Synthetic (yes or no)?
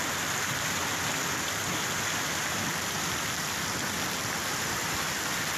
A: no